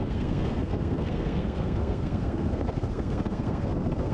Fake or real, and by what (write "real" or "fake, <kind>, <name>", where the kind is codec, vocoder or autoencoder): fake, codec, SNAC